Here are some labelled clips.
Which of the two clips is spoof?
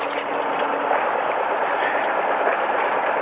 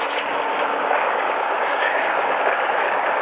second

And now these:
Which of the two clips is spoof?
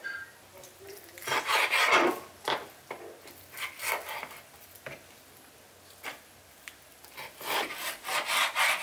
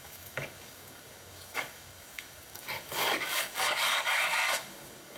second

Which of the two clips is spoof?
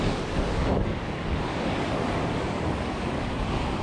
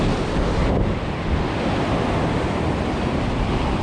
first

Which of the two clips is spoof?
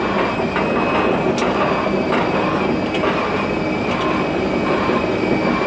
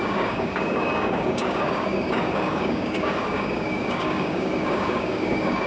second